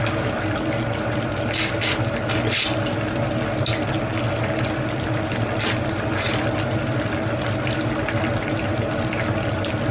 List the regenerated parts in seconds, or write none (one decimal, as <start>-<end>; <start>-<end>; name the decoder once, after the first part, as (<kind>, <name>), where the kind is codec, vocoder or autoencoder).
none